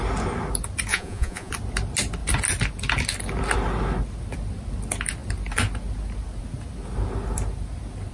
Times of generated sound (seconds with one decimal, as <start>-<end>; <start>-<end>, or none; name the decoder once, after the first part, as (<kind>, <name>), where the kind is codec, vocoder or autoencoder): 0.9-1.5 (vocoder, Vocos)